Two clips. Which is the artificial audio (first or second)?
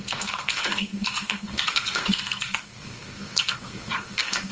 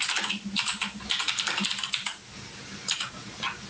first